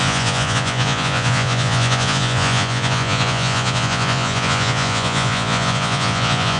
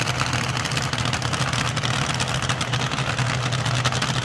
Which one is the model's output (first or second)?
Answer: first